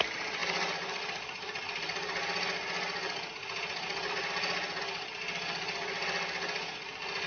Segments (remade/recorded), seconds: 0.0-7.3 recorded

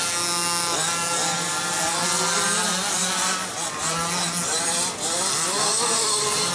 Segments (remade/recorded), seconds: 0.0-6.5 recorded

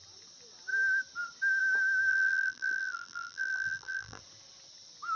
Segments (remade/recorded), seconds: 0.0-2.1 recorded; 2.1-4.2 remade; 4.2-5.2 recorded

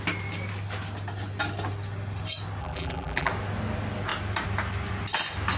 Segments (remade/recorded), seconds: 0.0-2.6 recorded; 2.6-3.3 remade; 3.3-5.6 recorded